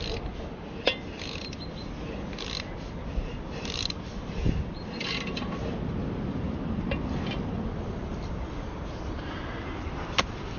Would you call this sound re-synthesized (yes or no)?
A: no